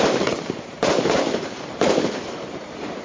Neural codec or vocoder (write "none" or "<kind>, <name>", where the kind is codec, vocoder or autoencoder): vocoder, BigVGAN v2